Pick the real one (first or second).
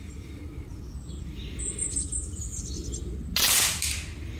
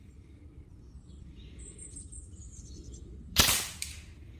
first